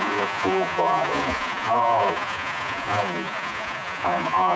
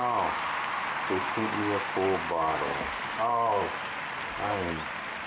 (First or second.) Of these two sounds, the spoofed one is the first